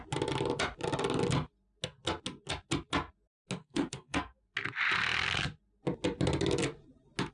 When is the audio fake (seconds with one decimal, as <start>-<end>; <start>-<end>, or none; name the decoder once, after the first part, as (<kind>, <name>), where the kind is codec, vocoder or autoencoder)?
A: 3.6-4.4 (codec, SNAC)